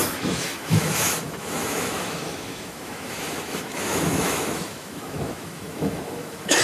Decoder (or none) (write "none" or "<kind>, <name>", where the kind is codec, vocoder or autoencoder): autoencoder, DAC-VAE